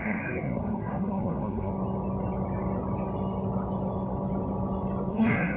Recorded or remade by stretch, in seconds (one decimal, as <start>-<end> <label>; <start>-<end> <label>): 0.0-1.7 remade; 1.7-5.1 recorded; 5.1-5.6 remade